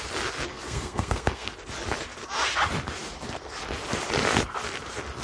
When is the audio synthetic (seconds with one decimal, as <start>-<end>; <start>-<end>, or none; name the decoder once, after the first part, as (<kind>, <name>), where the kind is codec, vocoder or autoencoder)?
0.5-1.5 (codec, SNAC)